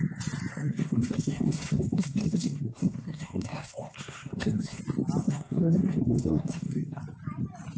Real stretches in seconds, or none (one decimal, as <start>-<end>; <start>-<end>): 0.0-0.5; 4.8-5.2; 7.0-7.8